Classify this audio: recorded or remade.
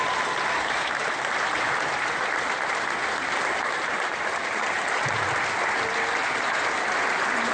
recorded